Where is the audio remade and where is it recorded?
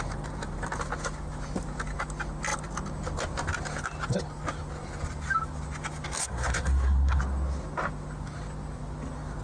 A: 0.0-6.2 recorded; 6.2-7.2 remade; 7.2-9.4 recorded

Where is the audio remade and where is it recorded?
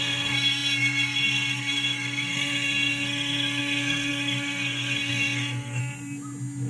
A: 0.0-5.8 remade; 5.8-6.7 recorded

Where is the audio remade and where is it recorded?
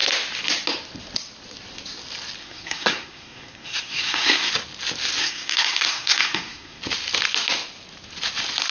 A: 0.0-2.4 recorded; 2.4-4.5 remade; 4.5-5.2 recorded; 5.2-6.8 remade; 6.8-8.7 recorded